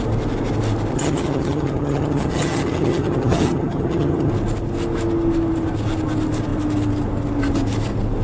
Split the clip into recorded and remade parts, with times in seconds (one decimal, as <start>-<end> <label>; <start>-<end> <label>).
0.0-0.9 recorded; 0.9-4.3 remade; 4.3-8.2 recorded